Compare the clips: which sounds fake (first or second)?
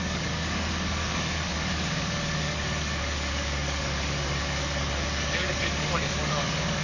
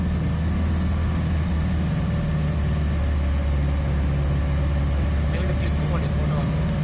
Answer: first